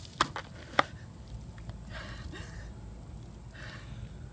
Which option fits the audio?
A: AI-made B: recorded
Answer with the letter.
B